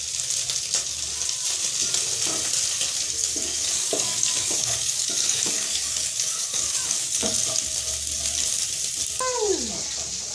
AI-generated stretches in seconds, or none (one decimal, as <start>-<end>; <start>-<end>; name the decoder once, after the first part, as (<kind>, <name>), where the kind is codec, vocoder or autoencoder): 3.2-7.3 (codec, DAC)